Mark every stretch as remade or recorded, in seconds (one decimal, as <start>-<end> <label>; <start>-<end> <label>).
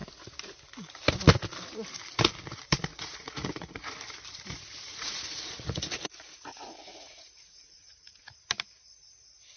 0.0-2.9 recorded; 2.9-3.9 remade; 3.9-4.9 recorded; 4.9-8.2 remade; 8.2-9.6 recorded